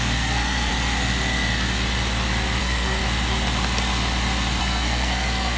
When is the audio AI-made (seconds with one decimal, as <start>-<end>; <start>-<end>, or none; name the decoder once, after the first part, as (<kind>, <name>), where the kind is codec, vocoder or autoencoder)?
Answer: 0.0-0.7 (codec, SNAC); 2.6-3.0; 4.6-5.6

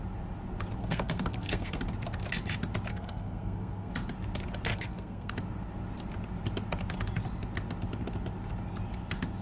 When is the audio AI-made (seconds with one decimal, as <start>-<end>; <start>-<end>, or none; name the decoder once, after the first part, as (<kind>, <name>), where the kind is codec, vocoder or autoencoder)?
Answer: 0.8-1.8 (codec, SNAC); 2.9-3.9; 4.7-5.3

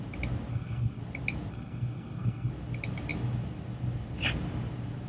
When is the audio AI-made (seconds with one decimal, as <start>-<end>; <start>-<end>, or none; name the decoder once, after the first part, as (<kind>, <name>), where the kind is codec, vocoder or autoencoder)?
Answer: 0.5-1.0 (codec, SNAC); 1.5-2.5